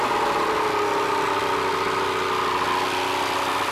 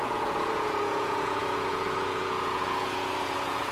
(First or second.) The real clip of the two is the first